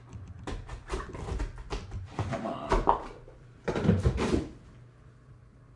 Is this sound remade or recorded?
remade